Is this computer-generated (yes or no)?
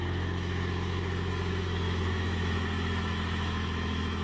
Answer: yes